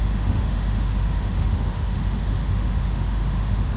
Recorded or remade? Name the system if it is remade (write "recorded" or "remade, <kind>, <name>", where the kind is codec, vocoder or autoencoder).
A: remade, autoencoder, DAC-VAE